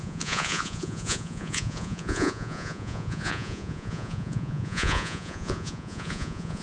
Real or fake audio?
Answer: fake